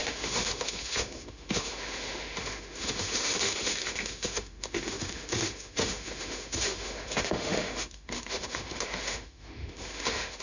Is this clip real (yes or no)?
no